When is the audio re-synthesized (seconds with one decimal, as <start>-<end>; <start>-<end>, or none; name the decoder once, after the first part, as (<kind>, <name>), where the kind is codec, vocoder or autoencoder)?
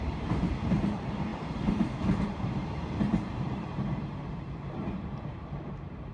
0.0-6.1 (vocoder, BigVGAN v2)